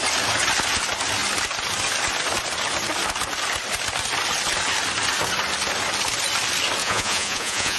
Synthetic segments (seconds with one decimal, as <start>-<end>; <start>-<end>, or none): 6.8-7.8

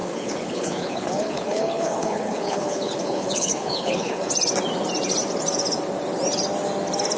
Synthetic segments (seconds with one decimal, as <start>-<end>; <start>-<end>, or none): 0.0-4.3

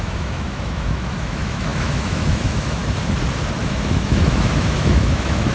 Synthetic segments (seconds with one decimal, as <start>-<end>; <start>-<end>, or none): 0.0-2.8; 3.6-5.5

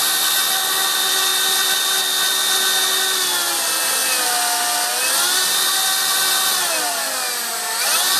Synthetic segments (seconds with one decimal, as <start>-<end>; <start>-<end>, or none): none